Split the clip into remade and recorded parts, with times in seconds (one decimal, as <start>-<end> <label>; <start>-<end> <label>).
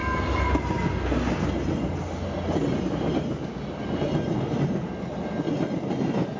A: 0.0-6.4 recorded